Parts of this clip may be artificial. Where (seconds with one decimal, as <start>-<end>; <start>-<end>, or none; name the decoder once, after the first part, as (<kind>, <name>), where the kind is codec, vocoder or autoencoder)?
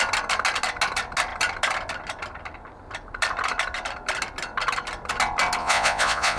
5.6-6.4 (vocoder, Vocos)